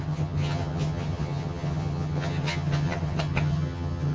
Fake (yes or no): yes